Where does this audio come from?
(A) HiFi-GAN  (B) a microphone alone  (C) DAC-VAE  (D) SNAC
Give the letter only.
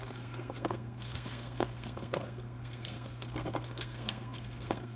D